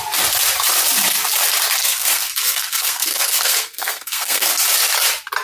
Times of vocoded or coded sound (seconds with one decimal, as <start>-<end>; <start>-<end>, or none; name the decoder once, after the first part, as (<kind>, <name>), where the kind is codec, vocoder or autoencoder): 1.8-4.5 (codec, SNAC)